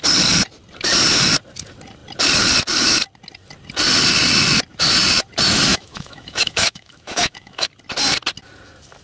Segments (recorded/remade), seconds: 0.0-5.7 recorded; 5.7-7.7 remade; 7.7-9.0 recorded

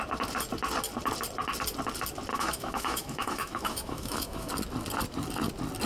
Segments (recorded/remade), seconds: 0.0-2.3 recorded; 2.3-4.5 remade; 4.5-5.9 recorded

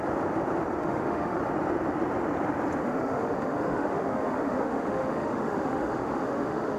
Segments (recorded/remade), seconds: 0.0-0.8 recorded; 0.8-1.4 remade; 1.4-2.8 recorded; 2.8-6.8 remade

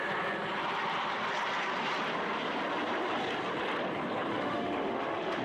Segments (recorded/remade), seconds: 0.0-4.3 recorded; 4.3-5.4 remade

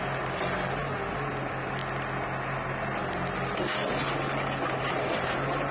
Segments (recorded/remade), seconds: 0.0-5.7 recorded